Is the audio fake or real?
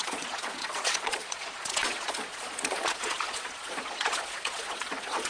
fake